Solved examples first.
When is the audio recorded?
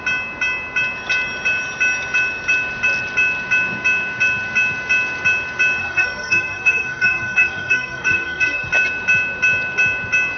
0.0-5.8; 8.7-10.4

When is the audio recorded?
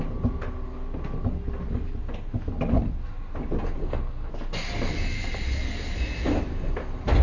0.0-3.8; 4.3-7.2